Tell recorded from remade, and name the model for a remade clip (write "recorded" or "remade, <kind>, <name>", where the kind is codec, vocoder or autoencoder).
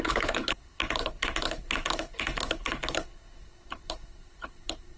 remade, codec, HILCodec